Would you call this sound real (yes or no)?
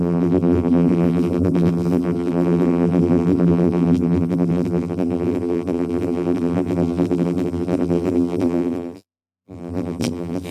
no